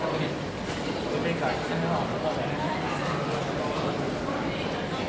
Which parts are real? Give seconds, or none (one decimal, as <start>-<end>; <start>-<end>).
0.0-5.1